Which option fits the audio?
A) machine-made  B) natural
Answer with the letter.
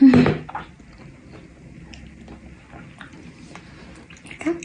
B